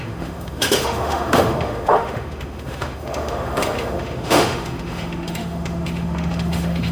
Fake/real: fake